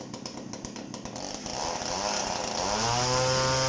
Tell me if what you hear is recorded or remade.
recorded